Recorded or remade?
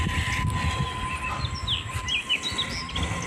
recorded